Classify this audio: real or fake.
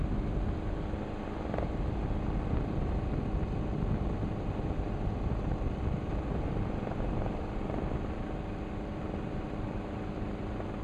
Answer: real